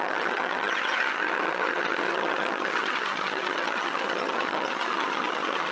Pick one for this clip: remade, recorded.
remade